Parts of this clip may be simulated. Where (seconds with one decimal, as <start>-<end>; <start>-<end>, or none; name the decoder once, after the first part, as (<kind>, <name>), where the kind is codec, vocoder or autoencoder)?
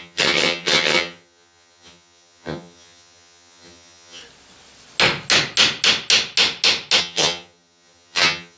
0.0-4.2 (vocoder, HiFi-GAN); 7.0-8.6